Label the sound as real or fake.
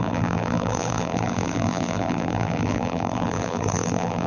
fake